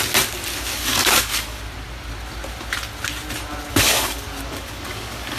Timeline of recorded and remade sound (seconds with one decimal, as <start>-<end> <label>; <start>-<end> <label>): 0.0-0.7 recorded; 0.7-1.6 remade; 1.6-3.7 recorded; 3.7-5.4 remade